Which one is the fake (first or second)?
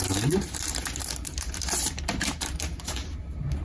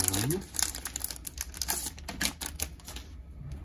first